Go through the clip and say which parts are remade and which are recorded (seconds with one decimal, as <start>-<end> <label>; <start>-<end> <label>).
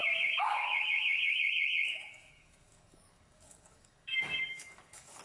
0.0-1.4 remade; 1.4-1.9 recorded; 1.9-5.2 remade